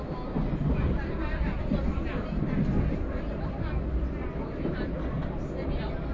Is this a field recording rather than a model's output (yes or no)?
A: yes